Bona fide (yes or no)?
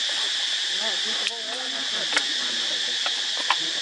yes